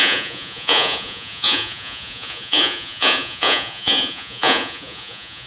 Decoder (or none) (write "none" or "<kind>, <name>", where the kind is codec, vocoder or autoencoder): vocoder, Vocos